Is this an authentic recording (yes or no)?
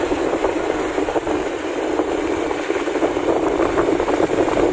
yes